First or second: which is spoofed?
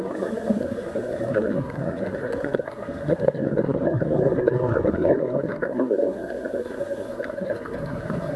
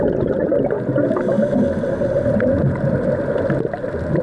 first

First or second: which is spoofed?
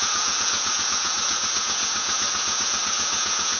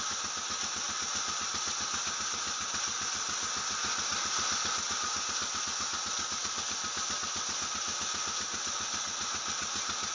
first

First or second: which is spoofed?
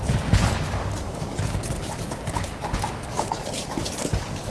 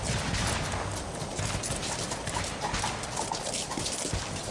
first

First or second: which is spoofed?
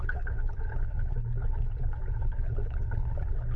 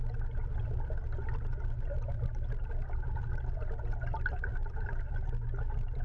first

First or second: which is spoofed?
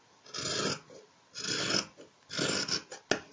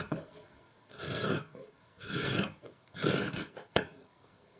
second